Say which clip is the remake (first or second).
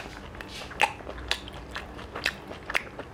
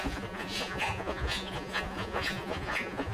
second